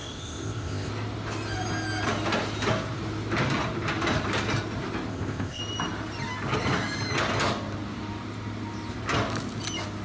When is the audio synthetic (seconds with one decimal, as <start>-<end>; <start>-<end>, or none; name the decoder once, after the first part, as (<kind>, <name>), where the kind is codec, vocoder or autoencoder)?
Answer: 0.0-0.9 (codec, ZipCodec); 5.1-5.6